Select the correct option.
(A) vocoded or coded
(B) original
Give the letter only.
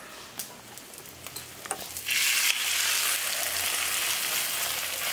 B